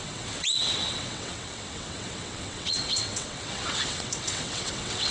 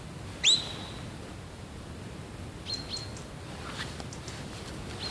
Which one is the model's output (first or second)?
first